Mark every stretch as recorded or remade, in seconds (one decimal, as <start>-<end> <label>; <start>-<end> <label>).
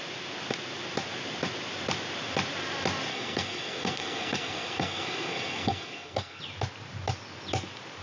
0.0-3.1 recorded; 3.1-6.4 remade; 6.4-8.0 recorded